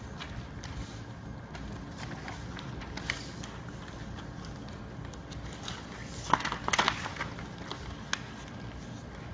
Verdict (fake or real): real